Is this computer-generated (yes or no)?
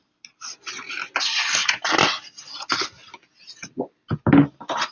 no